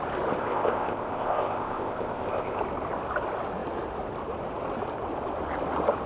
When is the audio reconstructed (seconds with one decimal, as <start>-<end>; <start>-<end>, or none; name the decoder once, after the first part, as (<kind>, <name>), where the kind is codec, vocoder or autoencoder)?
0.4-2.6 (codec, ZipCodec)